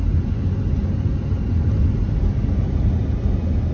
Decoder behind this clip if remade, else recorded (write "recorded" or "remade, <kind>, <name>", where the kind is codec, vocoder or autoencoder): recorded